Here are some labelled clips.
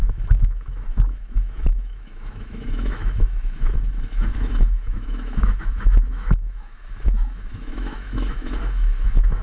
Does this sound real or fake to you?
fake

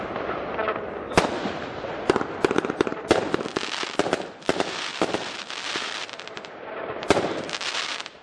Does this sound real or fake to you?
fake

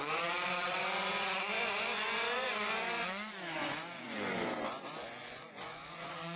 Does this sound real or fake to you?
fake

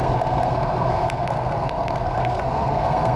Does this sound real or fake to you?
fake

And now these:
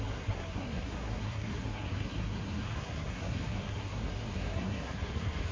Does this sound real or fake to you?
fake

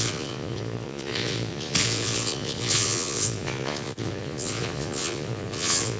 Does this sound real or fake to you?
fake